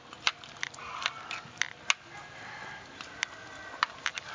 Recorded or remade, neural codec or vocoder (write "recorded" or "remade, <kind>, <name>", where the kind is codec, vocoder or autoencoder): recorded